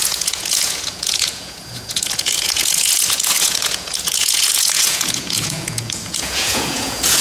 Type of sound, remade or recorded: remade